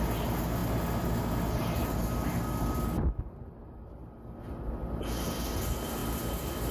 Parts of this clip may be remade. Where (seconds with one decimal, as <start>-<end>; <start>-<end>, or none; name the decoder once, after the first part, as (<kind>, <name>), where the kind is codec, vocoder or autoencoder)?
none